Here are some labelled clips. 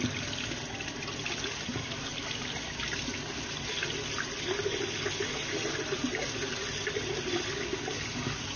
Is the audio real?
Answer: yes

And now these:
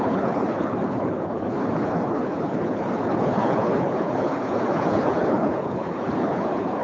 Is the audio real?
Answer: no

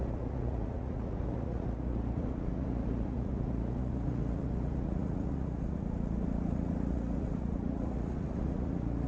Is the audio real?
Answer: no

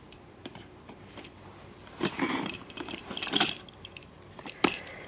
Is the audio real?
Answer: no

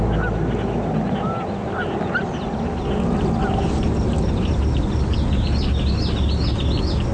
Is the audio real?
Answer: yes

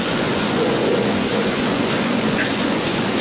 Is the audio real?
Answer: no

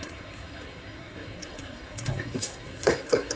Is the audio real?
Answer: no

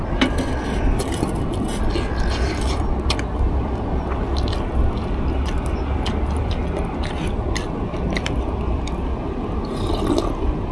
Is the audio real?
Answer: yes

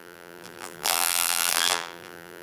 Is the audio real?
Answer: no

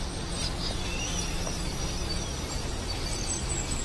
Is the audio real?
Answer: yes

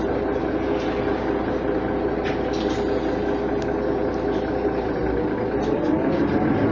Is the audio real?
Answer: yes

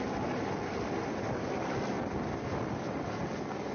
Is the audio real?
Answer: yes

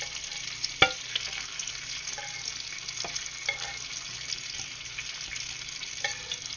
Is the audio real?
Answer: yes